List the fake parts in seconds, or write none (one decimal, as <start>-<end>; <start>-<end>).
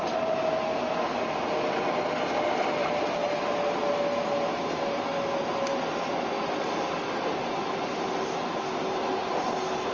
none